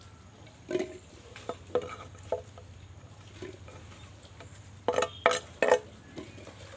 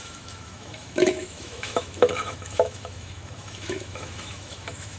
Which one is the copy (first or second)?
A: second